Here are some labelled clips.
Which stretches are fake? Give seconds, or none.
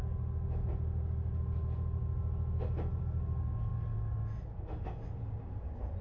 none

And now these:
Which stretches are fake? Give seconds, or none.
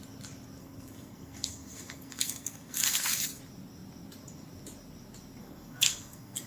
0.6-3.4 (codec, SNAC); 5.4-6.5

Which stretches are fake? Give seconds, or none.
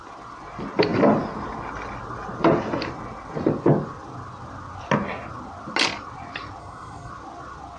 6.6-7.1 (codec, SNAC)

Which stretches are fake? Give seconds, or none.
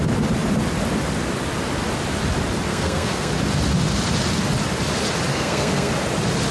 2.7-3.3 (codec, SNAC); 5.3-5.9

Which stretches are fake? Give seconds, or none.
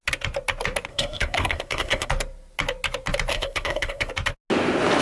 0.9-2.1 (codec, SNAC); 3.3-4.1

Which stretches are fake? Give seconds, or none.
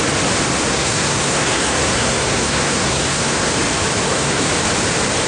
0.7-3.5 (codec, SNAC); 4.0-4.5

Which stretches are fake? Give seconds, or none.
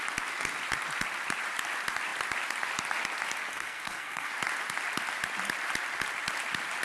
3.5-4.3 (codec, SNAC)